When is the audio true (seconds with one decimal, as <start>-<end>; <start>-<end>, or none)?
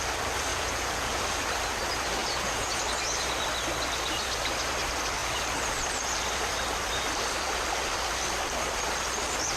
0.0-0.5; 1.2-2.2; 2.8-9.6